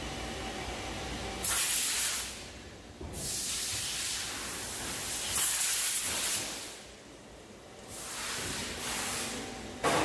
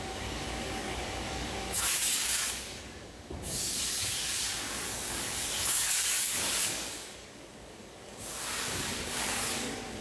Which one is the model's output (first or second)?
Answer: second